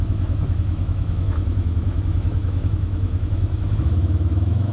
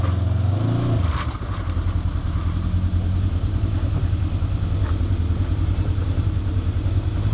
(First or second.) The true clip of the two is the second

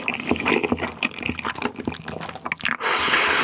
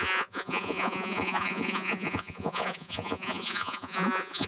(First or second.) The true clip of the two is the first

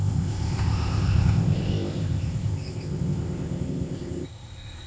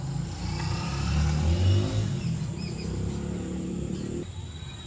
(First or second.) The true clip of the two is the second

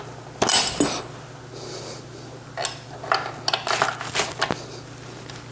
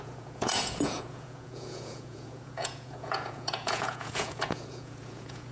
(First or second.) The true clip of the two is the first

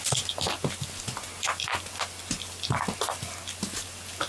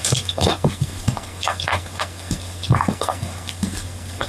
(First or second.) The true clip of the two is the first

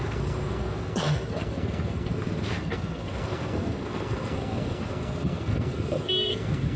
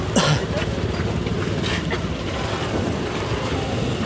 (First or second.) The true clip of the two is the second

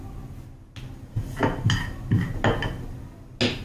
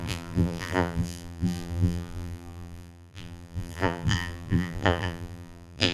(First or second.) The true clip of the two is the first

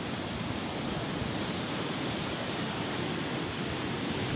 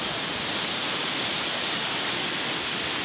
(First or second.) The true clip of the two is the first